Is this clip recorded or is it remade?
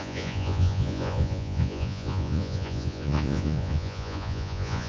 remade